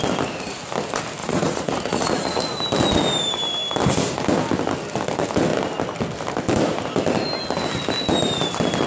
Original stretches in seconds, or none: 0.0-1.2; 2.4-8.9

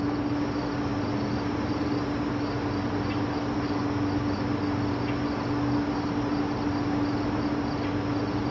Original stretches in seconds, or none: 0.0-8.5

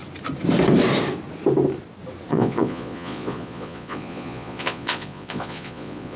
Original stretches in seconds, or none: 0.0-2.3

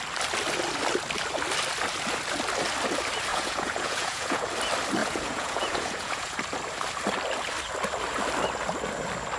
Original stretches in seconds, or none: 0.0-3.3; 4.5-5.0; 6.4-9.4